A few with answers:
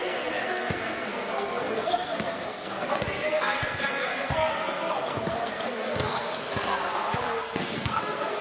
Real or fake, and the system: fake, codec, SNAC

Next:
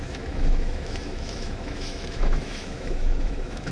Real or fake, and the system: fake, autoencoder, DAC-VAE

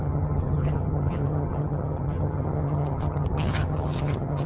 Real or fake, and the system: fake, vocoder, HiFi-GAN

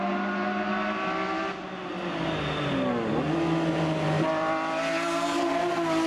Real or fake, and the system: real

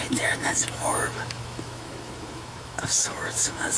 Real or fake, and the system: fake, autoencoder, DAC-VAE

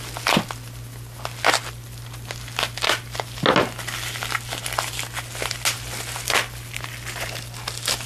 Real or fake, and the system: real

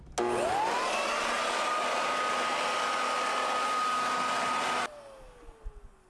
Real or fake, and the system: real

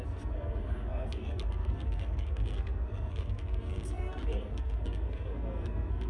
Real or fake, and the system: fake, codec, SNAC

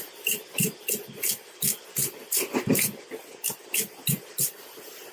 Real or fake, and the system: real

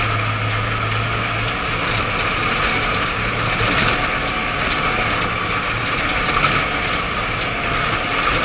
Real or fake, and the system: real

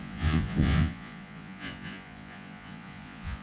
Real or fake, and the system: fake, vocoder, Vocos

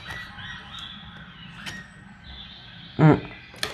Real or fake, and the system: real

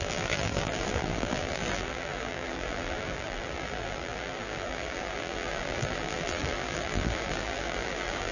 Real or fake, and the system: fake, vocoder, BigVGAN v2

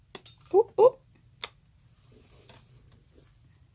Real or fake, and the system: real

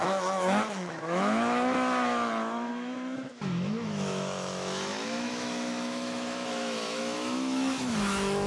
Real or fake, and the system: fake, autoencoder, DAC-VAE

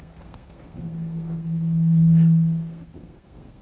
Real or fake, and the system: fake, codec, SNAC